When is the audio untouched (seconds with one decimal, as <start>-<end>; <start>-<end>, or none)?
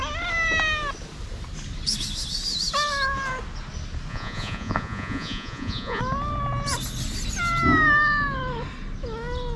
0.0-4.1; 6.0-9.6